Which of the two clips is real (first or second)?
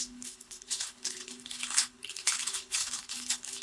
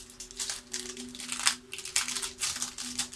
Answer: second